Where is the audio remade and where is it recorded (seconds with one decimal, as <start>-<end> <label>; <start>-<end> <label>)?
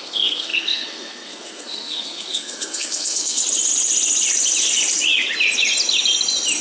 0.0-3.4 remade; 3.4-6.6 recorded